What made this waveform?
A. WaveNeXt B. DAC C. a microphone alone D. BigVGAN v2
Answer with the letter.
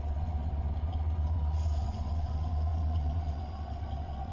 A